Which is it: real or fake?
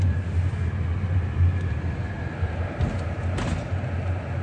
real